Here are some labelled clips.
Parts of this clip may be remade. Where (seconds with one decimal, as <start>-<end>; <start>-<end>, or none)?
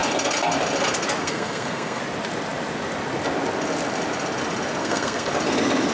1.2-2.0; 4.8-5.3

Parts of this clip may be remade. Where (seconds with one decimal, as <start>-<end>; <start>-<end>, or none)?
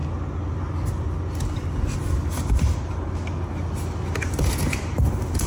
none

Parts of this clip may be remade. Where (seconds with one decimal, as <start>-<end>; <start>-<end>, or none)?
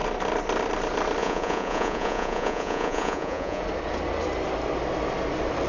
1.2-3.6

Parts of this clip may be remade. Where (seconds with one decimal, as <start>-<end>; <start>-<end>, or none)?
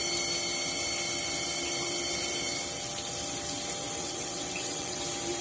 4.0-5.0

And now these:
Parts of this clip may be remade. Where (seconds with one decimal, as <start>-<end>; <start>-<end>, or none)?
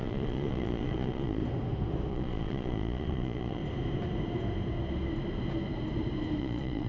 0.0-1.4; 2.1-3.6; 6.4-6.9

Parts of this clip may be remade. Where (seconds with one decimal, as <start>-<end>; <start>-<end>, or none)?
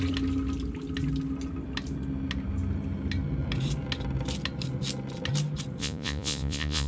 5.8-6.9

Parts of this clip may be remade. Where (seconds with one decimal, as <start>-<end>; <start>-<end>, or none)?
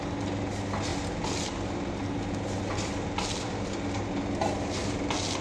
none